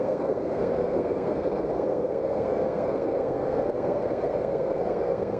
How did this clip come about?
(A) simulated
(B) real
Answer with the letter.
A